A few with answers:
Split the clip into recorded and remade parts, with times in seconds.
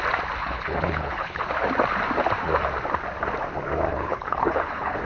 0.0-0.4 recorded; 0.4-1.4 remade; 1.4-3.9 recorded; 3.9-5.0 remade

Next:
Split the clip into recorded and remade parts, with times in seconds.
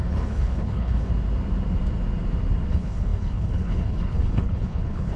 0.0-1.1 remade; 1.1-2.7 recorded; 2.7-5.2 remade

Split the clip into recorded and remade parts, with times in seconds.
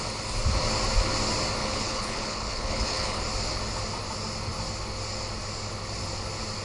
0.0-1.6 recorded; 1.6-3.2 remade; 3.2-6.6 recorded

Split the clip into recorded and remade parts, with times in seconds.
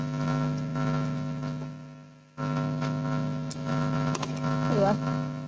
0.0-5.5 recorded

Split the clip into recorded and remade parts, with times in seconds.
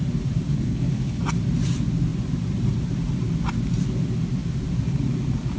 0.0-0.5 recorded; 0.5-1.2 remade; 1.2-5.6 recorded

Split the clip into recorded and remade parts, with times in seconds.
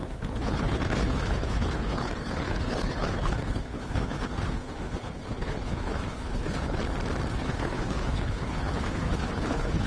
0.0-6.8 remade; 6.8-7.3 recorded; 7.3-9.9 remade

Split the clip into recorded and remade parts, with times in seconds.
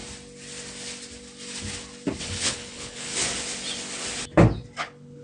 0.0-2.2 recorded; 2.2-3.1 remade; 3.1-4.8 recorded; 4.8-5.2 remade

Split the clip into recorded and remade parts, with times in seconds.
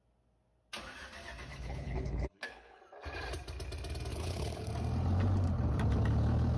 0.0-1.5 recorded; 1.5-2.8 remade; 2.8-4.1 recorded; 4.1-4.7 remade; 4.7-6.6 recorded